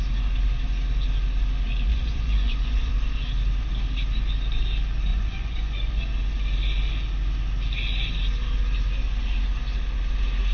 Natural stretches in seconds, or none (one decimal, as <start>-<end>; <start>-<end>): 0.0-1.9; 2.9-5.1; 6.0-10.5

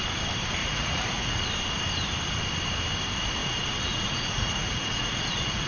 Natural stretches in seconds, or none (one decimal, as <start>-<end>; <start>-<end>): 0.0-0.6; 1.4-3.4

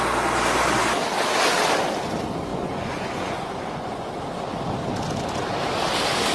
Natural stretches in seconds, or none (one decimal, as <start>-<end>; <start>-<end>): 0.0-2.5; 4.1-6.3

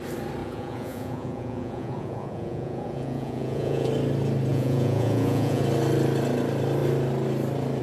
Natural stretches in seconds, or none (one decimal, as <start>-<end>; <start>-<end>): 0.0-0.4; 3.9-4.5; 5.6-7.8